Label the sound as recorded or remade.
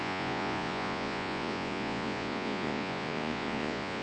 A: remade